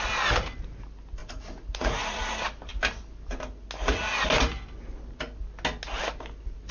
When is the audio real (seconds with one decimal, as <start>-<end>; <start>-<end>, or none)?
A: 0.0-1.2; 2.2-6.7